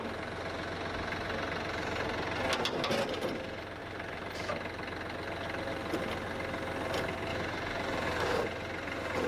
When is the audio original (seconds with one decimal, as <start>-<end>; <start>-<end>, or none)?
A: 0.0-3.8; 4.5-7.3; 8.4-9.3